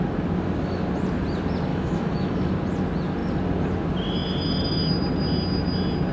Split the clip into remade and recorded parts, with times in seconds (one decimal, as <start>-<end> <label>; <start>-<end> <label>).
0.0-1.7 recorded; 1.7-2.5 remade; 2.5-6.1 recorded